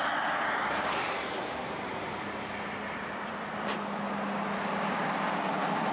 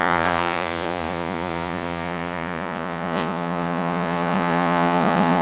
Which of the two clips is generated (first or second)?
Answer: second